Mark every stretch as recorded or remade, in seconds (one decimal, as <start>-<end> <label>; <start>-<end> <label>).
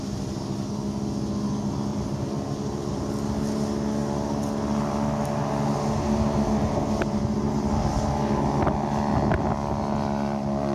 0.0-1.9 recorded; 1.9-3.1 remade; 3.1-10.7 recorded